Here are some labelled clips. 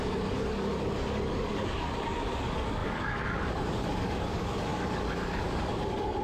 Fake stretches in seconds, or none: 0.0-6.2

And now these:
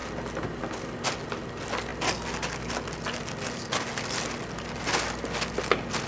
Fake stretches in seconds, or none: none

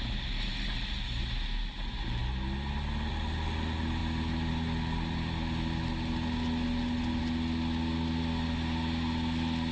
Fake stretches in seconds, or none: none

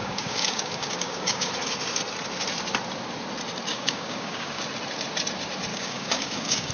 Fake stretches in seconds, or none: 0.0-1.5; 3.7-4.6; 5.7-6.7

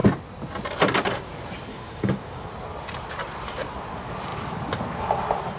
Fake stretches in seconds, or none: 1.7-2.5

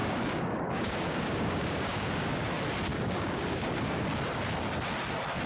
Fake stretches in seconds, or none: 0.0-2.5; 2.9-4.0

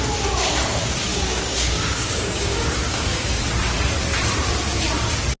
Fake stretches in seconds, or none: 1.1-3.4